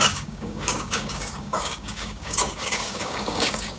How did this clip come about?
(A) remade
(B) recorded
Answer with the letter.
A